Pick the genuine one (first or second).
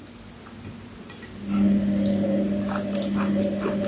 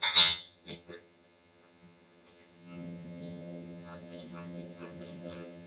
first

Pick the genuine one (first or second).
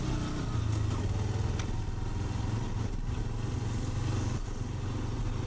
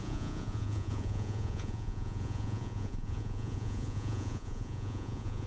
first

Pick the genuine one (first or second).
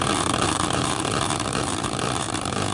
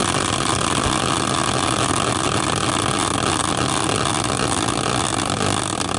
second